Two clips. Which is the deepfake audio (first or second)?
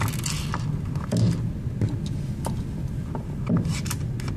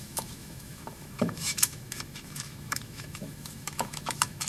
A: second